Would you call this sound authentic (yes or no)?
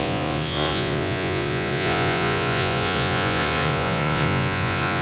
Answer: no